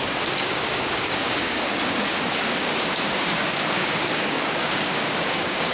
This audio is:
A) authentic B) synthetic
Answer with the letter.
B